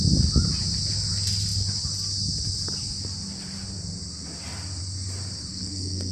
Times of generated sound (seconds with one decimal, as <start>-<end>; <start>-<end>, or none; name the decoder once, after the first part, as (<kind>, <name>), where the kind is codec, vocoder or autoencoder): 5.5-6.1 (codec, SNAC)

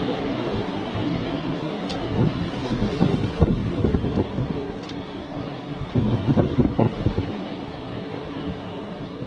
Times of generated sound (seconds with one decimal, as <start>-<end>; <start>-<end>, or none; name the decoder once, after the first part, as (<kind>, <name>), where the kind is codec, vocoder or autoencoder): 0.0-9.3 (codec, SNAC)

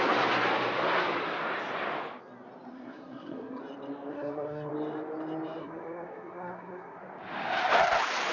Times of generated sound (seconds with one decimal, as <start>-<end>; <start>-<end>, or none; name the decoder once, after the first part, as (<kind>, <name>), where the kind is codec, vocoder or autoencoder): 2.7-3.6 (codec, SNAC); 4.1-4.7; 5.6-7.0

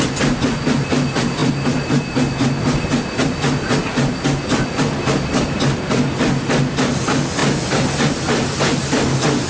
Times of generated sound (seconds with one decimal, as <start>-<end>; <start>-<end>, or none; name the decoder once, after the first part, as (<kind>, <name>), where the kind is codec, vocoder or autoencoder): none